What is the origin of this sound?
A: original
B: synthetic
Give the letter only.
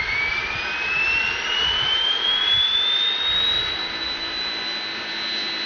A